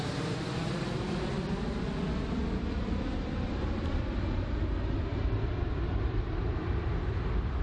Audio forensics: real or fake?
real